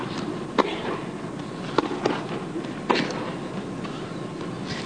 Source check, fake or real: real